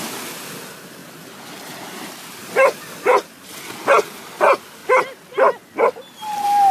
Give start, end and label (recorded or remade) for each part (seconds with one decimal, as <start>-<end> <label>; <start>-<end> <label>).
0.0-6.7 recorded